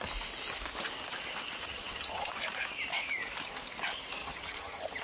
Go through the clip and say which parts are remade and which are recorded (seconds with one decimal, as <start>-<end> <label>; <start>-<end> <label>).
0.0-1.6 recorded; 1.6-2.3 remade; 2.3-4.2 recorded; 4.2-5.0 remade